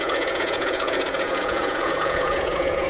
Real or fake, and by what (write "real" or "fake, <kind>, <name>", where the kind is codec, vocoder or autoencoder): fake, vocoder, Vocos